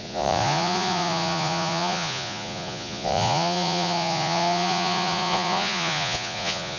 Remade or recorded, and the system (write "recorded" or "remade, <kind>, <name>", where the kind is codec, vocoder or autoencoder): remade, vocoder, Vocos